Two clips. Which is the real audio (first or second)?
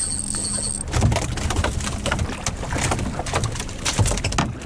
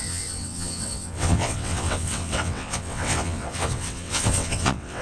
first